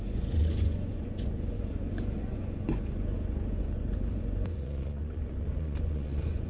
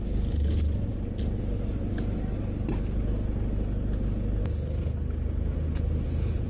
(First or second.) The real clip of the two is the second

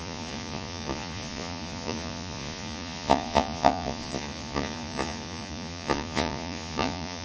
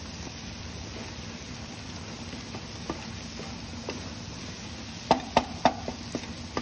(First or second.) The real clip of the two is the second